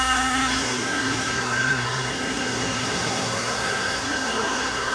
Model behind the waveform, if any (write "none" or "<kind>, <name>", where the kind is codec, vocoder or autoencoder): codec, SNAC